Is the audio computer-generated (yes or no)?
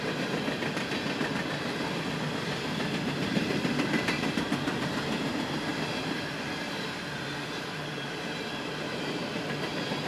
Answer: yes